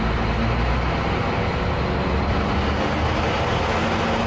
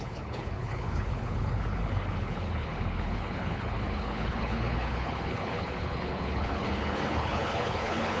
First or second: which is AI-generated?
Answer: second